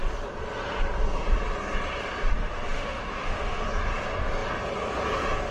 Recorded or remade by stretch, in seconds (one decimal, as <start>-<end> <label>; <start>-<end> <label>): 0.0-2.3 recorded; 2.3-3.7 remade; 3.7-5.5 recorded